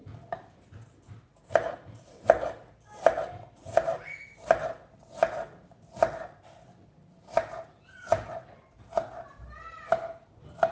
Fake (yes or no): no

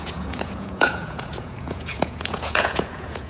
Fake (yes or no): yes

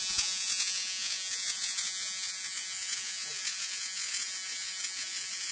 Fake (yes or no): yes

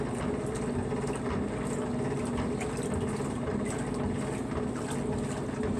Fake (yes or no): no